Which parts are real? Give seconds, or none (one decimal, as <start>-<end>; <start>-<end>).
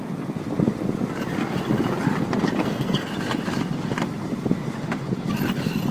0.0-2.6; 3.1-5.9